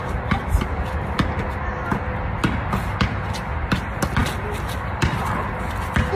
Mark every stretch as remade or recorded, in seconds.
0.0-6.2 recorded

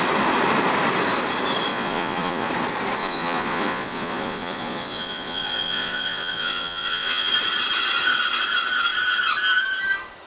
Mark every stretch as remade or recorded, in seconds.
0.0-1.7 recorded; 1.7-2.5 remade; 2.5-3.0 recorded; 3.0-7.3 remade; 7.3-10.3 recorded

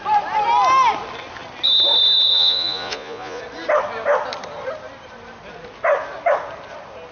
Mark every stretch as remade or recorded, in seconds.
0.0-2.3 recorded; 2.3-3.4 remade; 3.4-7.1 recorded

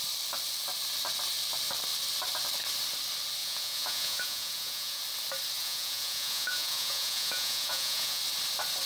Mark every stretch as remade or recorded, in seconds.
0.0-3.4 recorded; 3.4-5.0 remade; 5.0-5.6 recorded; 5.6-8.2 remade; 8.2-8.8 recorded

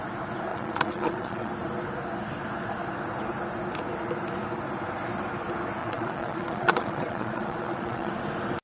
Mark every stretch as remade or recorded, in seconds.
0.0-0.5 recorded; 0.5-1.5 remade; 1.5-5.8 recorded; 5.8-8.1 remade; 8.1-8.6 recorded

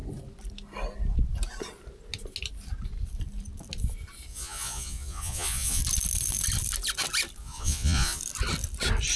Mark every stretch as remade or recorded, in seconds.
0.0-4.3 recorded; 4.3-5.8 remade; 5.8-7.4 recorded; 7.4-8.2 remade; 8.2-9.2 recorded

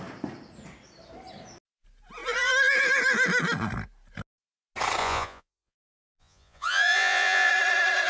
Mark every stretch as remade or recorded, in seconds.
0.0-5.0 recorded; 5.0-7.5 remade; 7.5-8.1 recorded

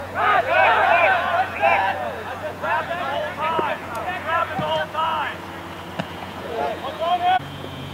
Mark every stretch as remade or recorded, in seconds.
0.0-5.3 remade; 5.3-6.0 recorded; 6.0-7.9 remade